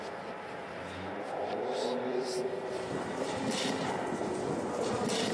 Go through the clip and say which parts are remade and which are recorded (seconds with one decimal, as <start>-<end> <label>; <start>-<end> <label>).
0.0-2.1 recorded; 2.1-3.4 remade; 3.4-5.3 recorded